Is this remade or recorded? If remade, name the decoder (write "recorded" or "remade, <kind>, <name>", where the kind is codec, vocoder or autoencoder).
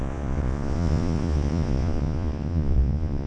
remade, vocoder, Vocos